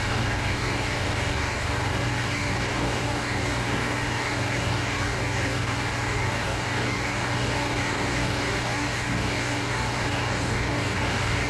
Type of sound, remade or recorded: remade